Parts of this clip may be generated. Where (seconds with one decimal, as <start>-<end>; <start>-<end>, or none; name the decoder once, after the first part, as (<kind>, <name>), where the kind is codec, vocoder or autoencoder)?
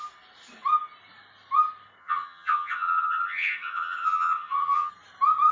2.0-4.9 (vocoder, HiFi-GAN)